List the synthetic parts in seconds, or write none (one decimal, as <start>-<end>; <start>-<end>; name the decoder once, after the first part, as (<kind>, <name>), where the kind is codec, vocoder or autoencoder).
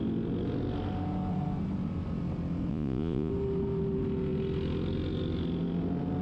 2.7-3.3 (vocoder, Vocos)